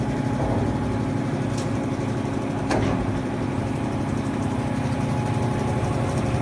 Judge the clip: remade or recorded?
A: remade